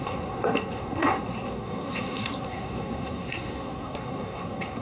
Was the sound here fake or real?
fake